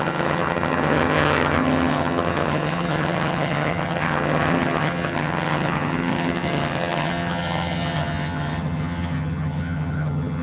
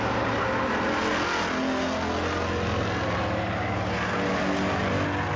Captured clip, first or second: second